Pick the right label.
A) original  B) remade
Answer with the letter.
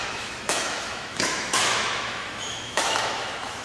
B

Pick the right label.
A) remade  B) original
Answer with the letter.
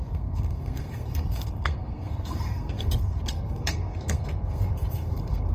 A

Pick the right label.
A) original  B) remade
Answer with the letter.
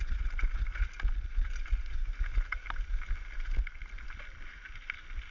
A